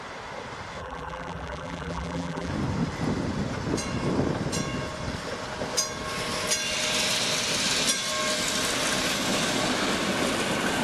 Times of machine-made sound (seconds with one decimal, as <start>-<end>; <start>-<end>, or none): 0.8-2.5